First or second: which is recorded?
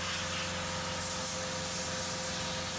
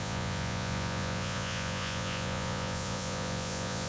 first